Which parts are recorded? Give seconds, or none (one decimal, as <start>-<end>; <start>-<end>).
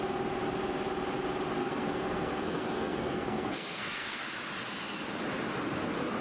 0.0-1.6; 4.2-6.2